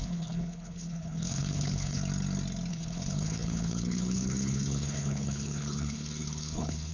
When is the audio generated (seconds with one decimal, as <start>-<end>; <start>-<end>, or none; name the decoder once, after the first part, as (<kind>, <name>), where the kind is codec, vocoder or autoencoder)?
0.0-2.0 (codec, HILCodec); 2.7-6.9